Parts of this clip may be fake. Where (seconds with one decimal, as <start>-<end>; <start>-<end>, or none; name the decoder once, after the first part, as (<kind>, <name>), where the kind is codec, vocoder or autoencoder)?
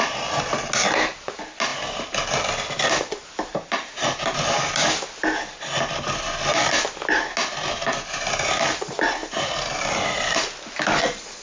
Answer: 3.2-3.9 (vocoder, BigVGAN v2); 9.2-10.4